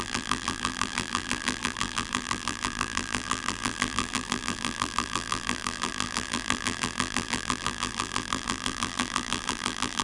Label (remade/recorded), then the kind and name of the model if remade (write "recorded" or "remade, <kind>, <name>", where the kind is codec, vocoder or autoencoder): remade, vocoder, BigVGAN v2